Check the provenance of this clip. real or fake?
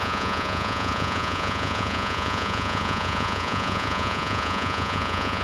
fake